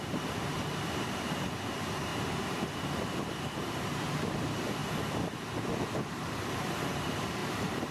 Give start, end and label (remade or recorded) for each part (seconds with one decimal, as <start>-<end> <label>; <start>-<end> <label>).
0.0-2.1 remade; 2.1-3.6 recorded; 3.6-4.8 remade; 4.8-5.9 recorded; 5.9-7.9 remade